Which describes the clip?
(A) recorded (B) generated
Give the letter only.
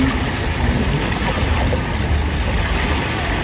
A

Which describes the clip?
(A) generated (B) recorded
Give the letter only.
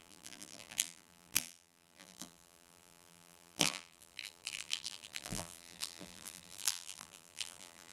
A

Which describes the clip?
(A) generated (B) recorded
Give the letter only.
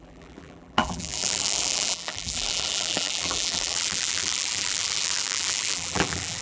A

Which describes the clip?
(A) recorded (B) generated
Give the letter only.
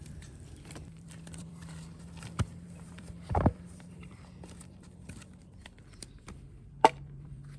B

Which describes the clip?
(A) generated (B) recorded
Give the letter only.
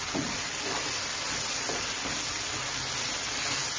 B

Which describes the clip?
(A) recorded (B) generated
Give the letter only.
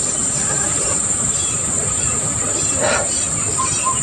B